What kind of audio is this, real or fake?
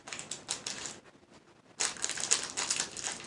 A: real